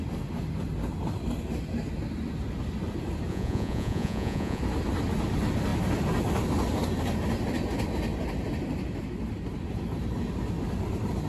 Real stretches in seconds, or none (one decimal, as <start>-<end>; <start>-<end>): 0.0-3.3; 4.6-11.3